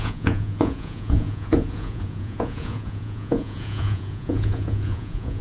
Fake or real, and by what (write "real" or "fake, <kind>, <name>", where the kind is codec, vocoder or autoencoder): fake, vocoder, Vocos